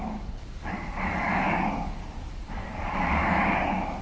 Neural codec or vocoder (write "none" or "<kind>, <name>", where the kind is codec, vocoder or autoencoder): codec, DAC